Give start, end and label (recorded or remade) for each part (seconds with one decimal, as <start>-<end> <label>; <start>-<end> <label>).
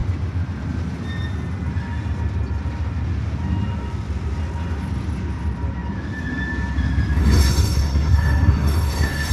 0.0-7.2 recorded; 7.2-9.3 remade